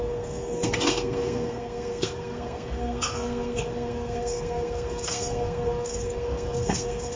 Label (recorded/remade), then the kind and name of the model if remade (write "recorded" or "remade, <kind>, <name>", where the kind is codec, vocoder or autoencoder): remade, codec, SNAC